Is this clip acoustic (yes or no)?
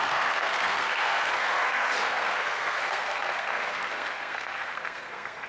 no